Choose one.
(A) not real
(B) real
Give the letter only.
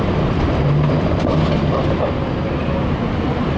A